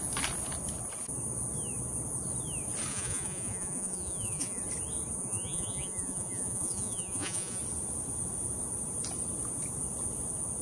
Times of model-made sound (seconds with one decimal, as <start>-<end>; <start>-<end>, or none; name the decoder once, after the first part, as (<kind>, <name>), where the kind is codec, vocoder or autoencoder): 2.9-4.6 (vocoder, Vocos); 5.2-7.6